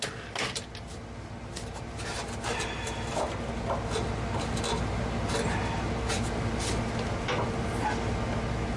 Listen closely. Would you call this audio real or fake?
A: real